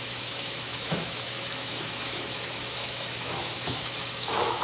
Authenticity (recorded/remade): remade